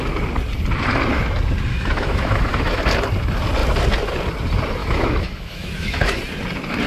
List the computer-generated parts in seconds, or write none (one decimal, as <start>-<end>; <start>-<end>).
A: 1.7-2.8; 4.8-6.2